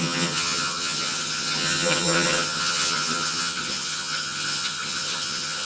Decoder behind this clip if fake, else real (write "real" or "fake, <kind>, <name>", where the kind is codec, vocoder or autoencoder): fake, vocoder, HiFi-GAN